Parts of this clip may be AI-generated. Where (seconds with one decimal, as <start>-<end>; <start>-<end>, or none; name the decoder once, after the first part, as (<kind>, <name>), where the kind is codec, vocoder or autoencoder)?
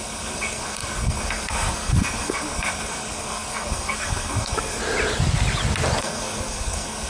0.0-4.8 (codec, SNAC); 6.0-7.1